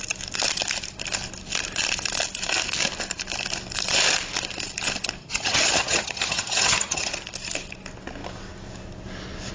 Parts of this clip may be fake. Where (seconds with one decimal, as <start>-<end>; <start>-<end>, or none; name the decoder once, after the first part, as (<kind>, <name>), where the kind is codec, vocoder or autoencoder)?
5.2-7.1 (vocoder, HiFi-GAN)